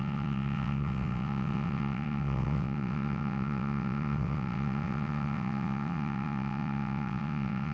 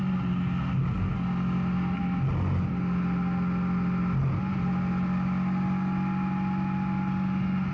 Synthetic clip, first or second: first